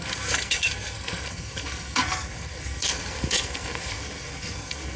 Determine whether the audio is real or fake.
fake